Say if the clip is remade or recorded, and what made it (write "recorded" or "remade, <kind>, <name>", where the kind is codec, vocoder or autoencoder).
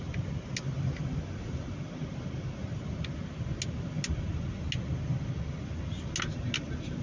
recorded